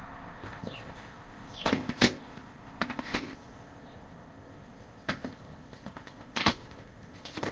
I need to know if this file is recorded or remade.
remade